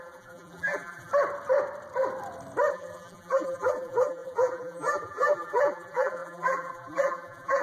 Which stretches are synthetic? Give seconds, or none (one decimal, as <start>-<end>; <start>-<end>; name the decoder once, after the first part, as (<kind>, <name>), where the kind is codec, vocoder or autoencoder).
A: 0.0-1.1 (vocoder, BigVGAN v2); 2.7-7.6